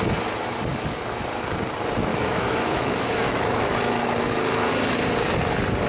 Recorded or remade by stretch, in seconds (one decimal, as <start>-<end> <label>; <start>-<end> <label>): 0.0-2.1 recorded; 2.1-4.7 remade; 4.7-5.9 recorded